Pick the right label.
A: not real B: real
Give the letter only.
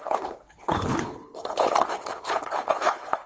A